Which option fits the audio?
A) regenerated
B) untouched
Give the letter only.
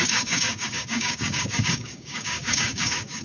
A